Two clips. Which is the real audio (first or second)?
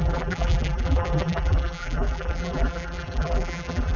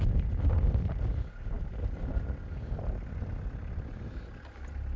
second